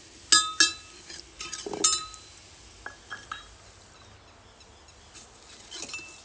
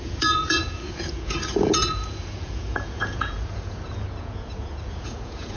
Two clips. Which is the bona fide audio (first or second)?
first